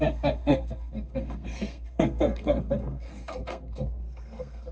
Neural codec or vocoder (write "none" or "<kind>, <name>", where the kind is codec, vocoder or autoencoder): codec, SNAC